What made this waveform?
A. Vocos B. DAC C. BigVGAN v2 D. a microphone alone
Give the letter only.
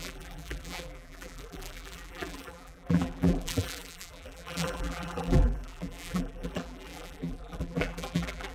C